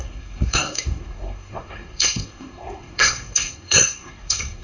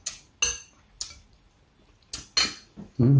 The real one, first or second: second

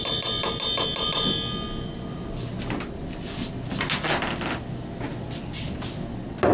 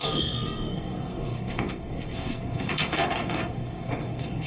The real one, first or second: first